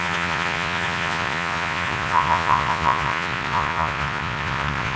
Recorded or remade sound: remade